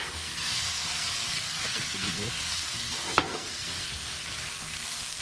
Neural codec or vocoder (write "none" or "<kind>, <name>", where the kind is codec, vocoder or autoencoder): codec, SNAC